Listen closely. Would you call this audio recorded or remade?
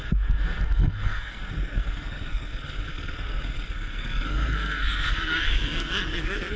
remade